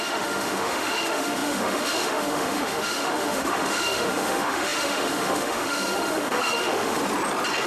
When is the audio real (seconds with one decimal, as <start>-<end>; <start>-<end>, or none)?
7.0-7.7